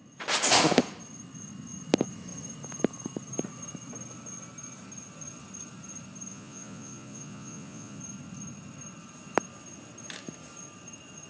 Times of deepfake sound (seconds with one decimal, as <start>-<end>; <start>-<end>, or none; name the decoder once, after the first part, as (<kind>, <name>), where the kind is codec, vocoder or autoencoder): 6.3-8.0 (vocoder, Vocos)

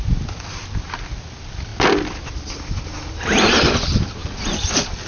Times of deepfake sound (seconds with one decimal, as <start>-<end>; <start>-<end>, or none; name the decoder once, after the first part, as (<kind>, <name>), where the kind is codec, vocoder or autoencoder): none

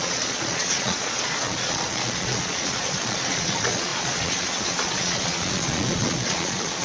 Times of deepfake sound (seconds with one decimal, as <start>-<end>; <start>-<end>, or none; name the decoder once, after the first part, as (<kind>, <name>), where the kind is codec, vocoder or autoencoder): 0.0-6.8 (vocoder, Vocos)